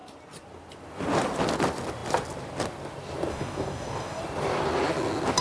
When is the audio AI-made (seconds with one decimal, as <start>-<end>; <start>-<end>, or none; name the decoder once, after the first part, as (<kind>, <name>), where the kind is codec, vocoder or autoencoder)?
3.3-4.2 (codec, DAC)